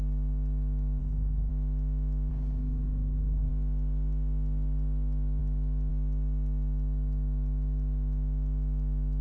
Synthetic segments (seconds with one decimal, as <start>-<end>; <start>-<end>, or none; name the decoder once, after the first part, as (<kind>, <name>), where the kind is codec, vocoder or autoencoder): 1.0-1.5 (codec, HILCodec); 2.3-3.5

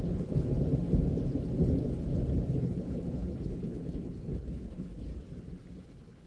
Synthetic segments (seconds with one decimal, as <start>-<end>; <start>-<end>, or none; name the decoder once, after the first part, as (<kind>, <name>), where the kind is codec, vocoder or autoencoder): 0.0-0.5 (codec, HILCodec); 2.6-5.1; 5.8-6.3

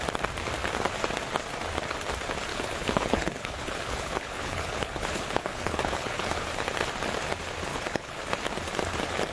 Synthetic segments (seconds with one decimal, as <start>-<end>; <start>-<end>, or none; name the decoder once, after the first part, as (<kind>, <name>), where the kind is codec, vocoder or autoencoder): 2.5-6.5 (codec, HILCodec); 7.7-8.2

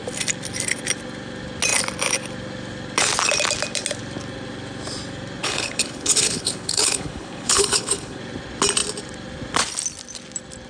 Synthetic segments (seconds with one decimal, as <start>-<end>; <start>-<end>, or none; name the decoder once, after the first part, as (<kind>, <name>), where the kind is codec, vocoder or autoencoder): 5.4-8.2 (codec, HILCodec)

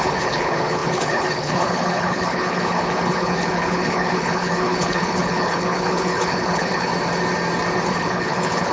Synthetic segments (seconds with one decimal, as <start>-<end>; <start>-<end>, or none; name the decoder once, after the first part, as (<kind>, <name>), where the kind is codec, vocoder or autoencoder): 0.0-6.9 (codec, HILCodec); 7.9-8.7

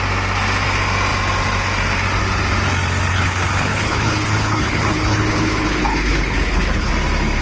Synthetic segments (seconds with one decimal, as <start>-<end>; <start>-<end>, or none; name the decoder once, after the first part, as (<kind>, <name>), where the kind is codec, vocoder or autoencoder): 3.1-6.9 (codec, HILCodec)